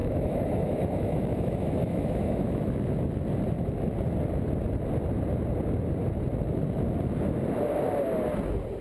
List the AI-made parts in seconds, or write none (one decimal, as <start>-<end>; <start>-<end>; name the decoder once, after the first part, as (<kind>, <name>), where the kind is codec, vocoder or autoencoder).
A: 0.0-2.7 (autoencoder, DAC-VAE)